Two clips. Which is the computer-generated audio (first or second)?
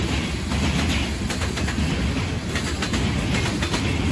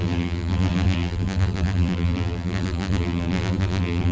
second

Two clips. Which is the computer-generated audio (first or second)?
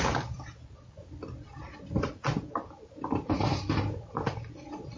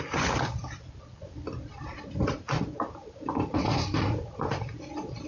second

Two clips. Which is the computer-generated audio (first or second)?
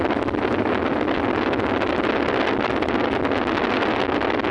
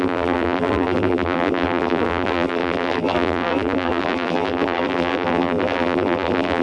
second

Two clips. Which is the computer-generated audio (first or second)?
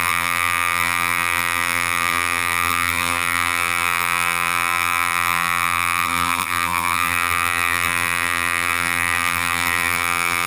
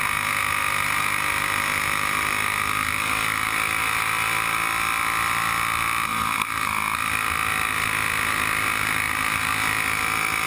first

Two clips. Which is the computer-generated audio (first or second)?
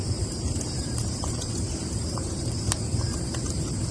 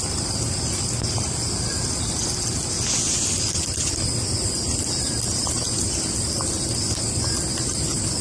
first